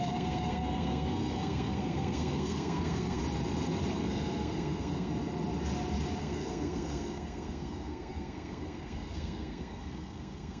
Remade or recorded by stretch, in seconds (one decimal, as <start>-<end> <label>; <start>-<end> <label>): 0.0-3.2 remade; 3.2-3.9 recorded; 3.9-5.1 remade; 5.1-6.2 recorded; 6.2-10.6 remade

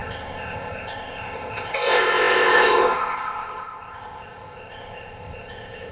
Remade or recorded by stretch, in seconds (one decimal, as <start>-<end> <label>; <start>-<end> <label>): 0.0-5.9 remade

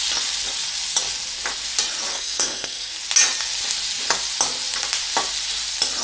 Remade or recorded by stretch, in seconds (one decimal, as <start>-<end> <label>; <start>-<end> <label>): 0.0-2.1 recorded; 2.1-2.9 remade; 2.9-6.0 recorded

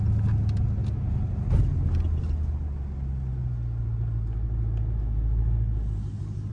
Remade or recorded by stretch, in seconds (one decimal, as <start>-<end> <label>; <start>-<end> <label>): 0.0-6.5 recorded

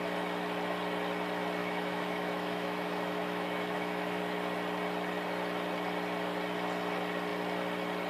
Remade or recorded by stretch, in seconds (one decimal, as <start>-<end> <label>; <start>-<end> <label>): 0.0-1.6 recorded; 1.6-4.2 remade; 4.2-8.1 recorded